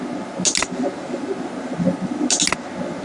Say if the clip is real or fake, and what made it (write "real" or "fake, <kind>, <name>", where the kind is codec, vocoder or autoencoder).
real